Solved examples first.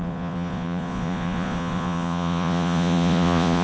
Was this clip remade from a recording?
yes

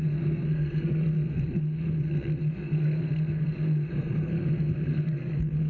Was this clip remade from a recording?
yes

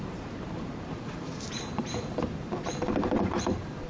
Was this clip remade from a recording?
yes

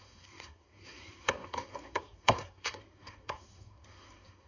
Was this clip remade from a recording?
yes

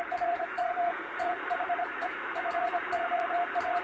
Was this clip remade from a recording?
yes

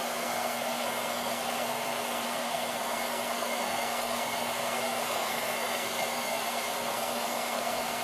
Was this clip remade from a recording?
yes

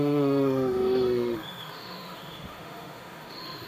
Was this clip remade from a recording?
yes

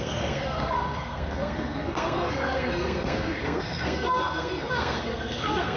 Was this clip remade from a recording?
yes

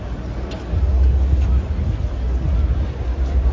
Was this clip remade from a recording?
no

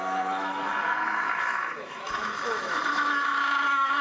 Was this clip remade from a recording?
yes